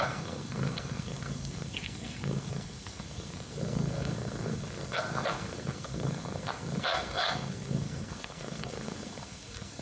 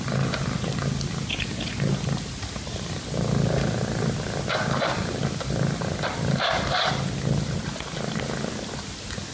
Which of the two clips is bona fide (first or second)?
second